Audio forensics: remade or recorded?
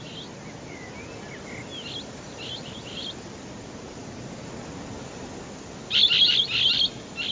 recorded